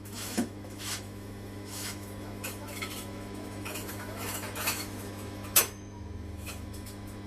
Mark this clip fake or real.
fake